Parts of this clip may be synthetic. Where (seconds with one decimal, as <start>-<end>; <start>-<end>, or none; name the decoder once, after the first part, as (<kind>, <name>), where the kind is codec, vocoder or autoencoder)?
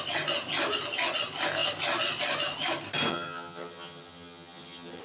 3.1-5.0 (vocoder, HiFi-GAN)